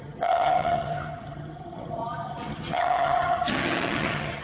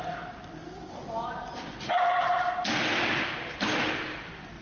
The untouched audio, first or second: second